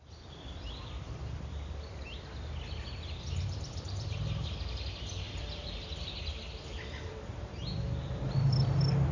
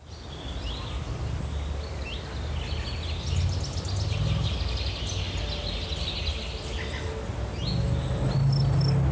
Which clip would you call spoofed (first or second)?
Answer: first